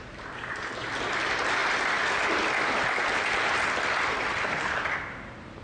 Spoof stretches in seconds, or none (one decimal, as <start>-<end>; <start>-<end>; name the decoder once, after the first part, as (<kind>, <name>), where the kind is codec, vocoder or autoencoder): none